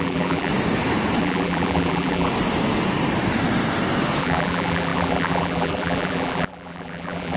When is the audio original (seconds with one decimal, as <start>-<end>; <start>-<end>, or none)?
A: 0.5-1.2; 2.3-4.2